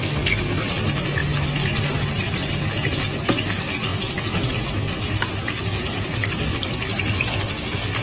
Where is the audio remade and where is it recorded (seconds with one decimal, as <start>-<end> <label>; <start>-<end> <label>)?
0.0-8.0 recorded